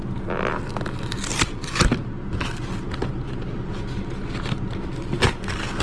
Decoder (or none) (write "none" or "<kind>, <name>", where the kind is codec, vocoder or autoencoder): none